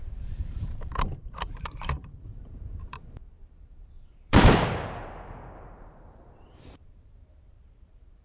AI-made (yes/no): yes